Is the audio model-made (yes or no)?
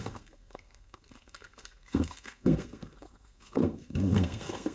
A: yes